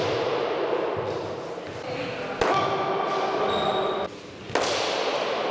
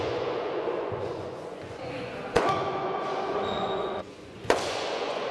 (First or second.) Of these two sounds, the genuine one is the first